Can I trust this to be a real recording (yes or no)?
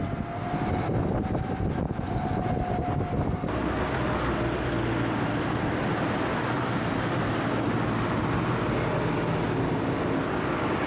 yes